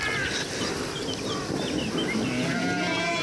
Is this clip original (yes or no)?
yes